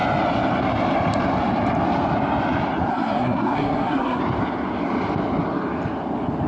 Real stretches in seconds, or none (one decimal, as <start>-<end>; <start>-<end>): 0.0-2.9; 4.2-6.5